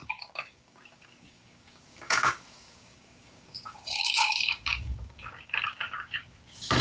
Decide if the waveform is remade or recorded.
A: remade